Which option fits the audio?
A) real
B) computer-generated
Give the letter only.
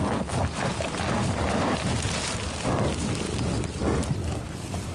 A